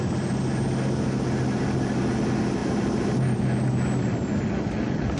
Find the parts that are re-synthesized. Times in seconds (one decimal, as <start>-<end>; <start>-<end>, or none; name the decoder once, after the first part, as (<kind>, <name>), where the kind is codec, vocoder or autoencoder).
none